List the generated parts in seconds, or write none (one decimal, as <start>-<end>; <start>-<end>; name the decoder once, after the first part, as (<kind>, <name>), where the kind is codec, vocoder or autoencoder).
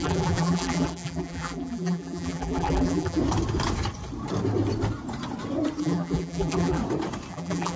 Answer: 0.0-3.2 (vocoder, BigVGAN v2); 5.8-6.8; 7.3-7.8